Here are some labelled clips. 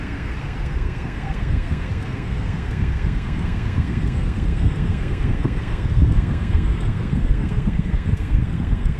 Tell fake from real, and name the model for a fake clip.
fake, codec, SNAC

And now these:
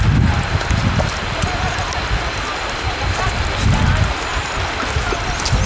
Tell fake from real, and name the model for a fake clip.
real